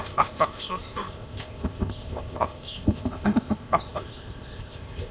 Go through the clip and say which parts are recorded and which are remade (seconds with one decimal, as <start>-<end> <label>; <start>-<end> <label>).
0.0-5.1 remade